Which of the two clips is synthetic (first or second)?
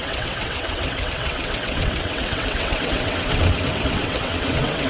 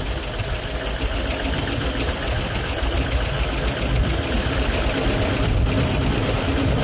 first